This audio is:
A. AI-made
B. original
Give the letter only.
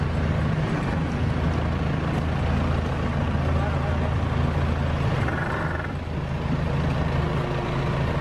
B